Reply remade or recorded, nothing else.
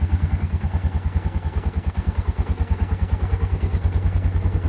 remade